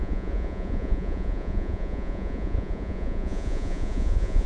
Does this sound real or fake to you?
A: fake